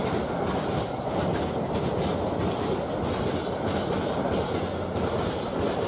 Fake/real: real